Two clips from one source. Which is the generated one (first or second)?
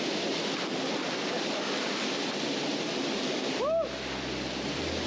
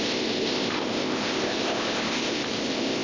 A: second